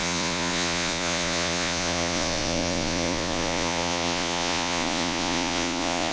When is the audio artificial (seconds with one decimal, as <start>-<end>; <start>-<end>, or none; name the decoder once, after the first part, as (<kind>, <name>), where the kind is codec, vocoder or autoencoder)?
0.0-6.1 (vocoder, Vocos)